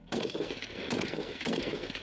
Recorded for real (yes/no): no